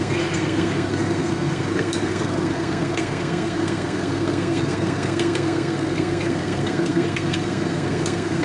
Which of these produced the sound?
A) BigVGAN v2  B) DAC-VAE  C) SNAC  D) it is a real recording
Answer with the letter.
C